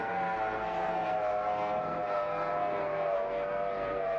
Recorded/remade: remade